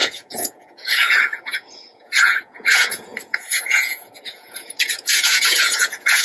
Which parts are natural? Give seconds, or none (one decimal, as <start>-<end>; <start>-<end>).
none